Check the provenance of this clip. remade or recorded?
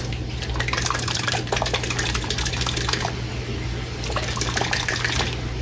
recorded